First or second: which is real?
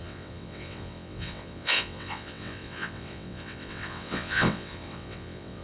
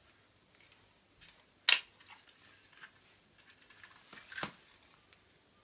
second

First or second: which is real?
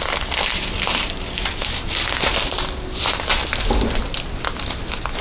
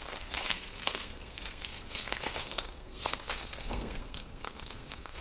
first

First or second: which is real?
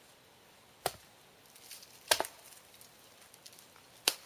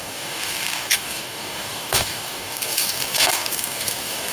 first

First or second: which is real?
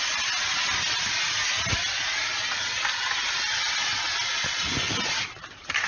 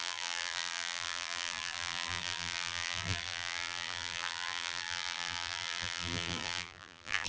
first